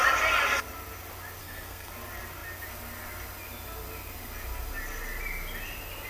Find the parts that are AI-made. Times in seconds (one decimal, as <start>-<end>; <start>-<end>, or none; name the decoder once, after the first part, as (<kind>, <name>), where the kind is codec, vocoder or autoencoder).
1.4-1.9 (codec, SNAC)